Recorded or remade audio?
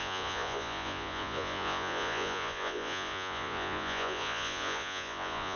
remade